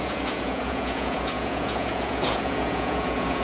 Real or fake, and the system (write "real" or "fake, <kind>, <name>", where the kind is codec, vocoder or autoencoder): fake, vocoder, Vocos